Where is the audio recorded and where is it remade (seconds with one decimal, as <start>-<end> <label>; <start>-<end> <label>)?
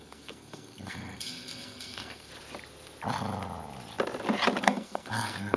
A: 0.0-2.3 remade; 2.3-4.6 recorded; 4.6-5.6 remade